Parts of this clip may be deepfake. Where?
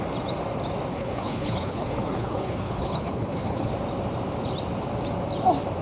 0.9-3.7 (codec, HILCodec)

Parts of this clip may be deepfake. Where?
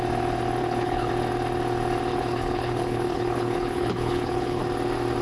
0.6-1.1 (codec, HILCodec); 2.1-4.6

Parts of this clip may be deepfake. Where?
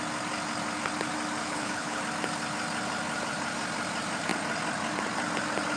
1.4-2.0 (codec, HILCodec)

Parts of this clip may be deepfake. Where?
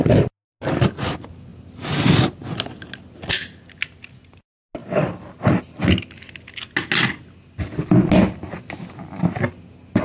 none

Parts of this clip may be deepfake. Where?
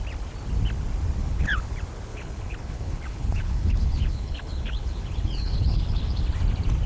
1.2-1.7 (codec, HILCodec); 2.1-6.2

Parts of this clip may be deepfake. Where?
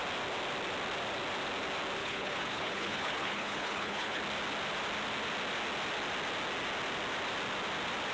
2.0-4.2 (codec, HILCodec)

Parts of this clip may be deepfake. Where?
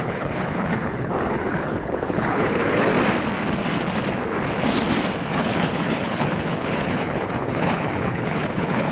0.0-2.9 (codec, HILCodec); 5.3-8.9